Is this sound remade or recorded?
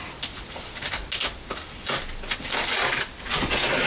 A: recorded